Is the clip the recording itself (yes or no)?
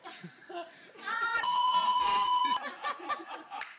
no